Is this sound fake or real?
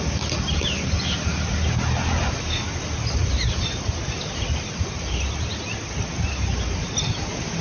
real